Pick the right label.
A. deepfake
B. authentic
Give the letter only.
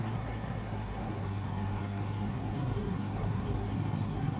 A